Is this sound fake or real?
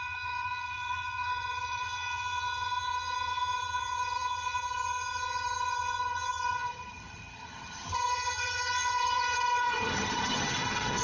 fake